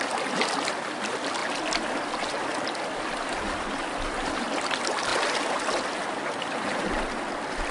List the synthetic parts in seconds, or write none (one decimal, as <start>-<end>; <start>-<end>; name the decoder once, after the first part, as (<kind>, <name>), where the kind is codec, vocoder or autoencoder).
none